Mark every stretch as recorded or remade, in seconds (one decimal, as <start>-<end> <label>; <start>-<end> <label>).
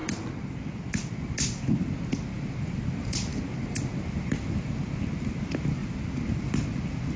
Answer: 0.0-7.2 recorded